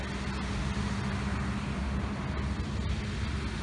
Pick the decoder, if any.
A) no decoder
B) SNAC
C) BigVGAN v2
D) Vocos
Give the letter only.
A